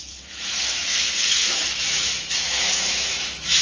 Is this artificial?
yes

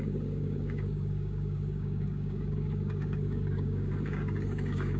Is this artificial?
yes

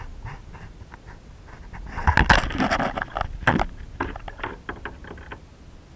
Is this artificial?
no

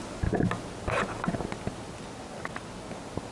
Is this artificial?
no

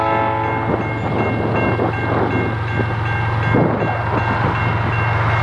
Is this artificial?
no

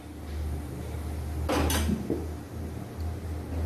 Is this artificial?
no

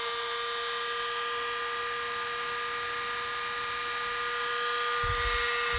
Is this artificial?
no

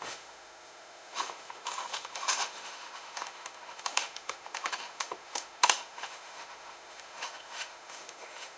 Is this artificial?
yes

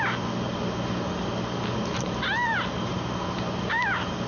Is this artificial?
no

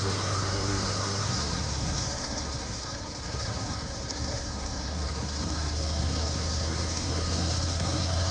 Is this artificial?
yes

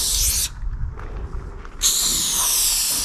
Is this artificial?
no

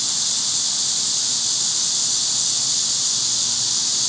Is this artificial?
no